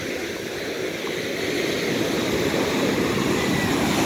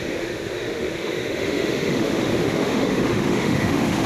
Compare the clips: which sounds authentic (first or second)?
first